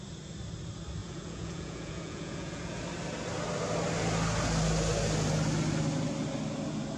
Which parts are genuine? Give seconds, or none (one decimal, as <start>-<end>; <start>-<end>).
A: 0.0-1.0; 2.8-7.0